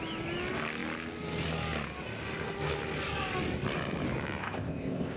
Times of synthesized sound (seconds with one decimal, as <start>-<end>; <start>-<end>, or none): 4.4-5.2